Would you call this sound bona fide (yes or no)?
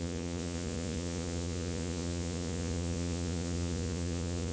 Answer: no